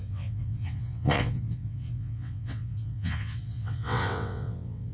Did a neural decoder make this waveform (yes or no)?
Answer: yes